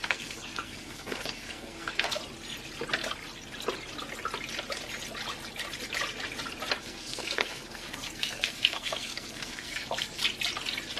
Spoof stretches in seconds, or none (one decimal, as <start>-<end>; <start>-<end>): 0.0-2.2; 6.8-10.2